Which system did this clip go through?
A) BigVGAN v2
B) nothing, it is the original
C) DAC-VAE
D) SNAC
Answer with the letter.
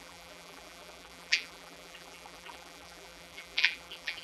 A